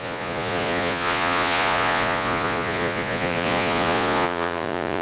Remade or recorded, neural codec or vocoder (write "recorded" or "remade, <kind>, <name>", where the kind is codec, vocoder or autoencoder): remade, vocoder, Vocos